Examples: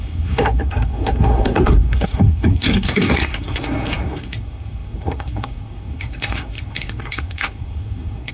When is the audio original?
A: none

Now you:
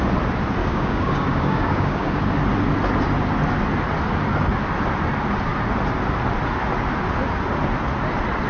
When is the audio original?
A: 0.0-0.6; 2.2-8.5

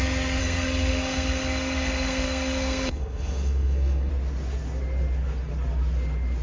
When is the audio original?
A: 0.0-0.4; 4.1-6.4

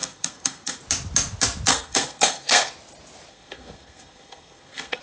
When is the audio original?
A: 0.8-1.7; 2.7-3.3

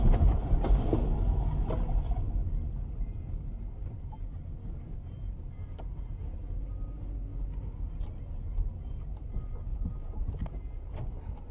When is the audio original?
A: 0.0-11.5

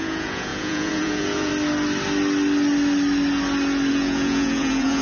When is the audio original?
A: 1.5-3.9

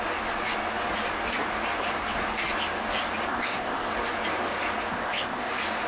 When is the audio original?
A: 0.0-3.3; 3.9-4.9; 5.5-5.9

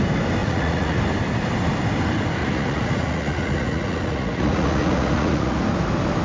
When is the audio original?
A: 0.0-0.4; 1.0-2.4; 5.6-6.2